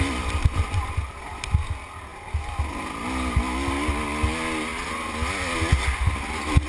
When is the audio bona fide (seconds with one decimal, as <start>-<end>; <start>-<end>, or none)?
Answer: 0.0-6.7